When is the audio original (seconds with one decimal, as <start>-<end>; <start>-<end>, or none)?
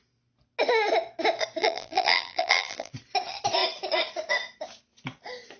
0.0-1.6; 2.9-5.6